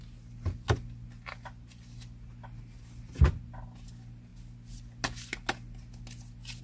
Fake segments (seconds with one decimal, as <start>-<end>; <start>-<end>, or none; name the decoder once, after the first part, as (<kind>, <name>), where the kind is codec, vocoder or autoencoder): none